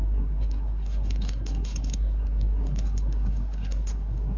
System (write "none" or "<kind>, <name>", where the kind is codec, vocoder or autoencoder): codec, SNAC